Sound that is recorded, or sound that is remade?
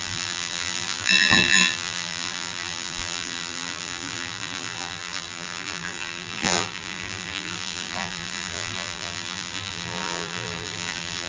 remade